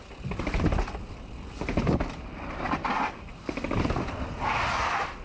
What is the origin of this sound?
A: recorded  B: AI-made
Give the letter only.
A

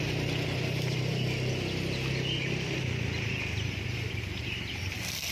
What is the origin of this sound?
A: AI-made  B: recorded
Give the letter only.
B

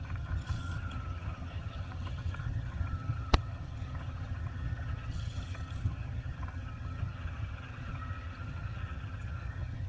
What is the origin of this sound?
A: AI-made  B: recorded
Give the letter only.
A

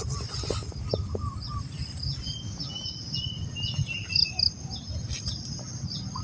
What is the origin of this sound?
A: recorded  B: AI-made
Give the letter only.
A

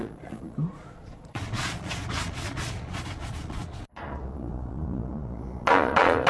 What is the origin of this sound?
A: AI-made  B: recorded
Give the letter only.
A